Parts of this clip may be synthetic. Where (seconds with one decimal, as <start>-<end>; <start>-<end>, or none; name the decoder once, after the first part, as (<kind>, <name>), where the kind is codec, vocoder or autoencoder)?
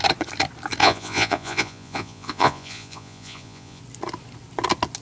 0.8-3.8 (vocoder, Vocos)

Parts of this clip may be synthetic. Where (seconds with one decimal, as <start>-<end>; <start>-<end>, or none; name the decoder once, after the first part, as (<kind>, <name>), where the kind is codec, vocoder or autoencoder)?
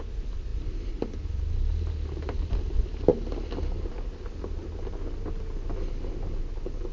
none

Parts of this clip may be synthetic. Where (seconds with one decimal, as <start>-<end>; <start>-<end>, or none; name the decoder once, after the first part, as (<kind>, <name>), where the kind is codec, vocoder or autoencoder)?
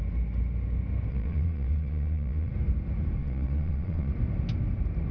1.1-2.5 (vocoder, Vocos); 3.2-4.1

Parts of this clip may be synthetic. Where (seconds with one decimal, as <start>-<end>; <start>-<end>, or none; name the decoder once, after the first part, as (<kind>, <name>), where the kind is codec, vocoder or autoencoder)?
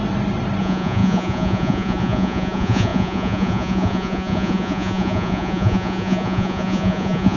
0.6-7.4 (vocoder, Vocos)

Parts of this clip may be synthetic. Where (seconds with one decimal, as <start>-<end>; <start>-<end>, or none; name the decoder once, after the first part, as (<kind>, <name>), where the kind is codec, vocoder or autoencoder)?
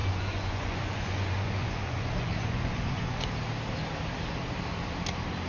0.0-3.3 (vocoder, Vocos)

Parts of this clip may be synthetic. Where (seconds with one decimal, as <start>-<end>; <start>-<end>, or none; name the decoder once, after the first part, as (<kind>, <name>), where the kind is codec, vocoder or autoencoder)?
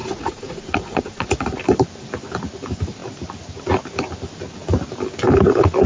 0.0-1.6 (vocoder, Vocos)